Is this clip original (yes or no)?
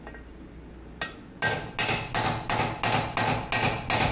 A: yes